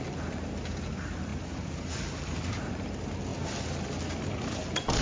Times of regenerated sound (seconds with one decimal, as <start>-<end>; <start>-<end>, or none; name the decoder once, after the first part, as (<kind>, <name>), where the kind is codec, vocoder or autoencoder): none